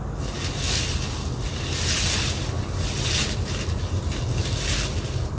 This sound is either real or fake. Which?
real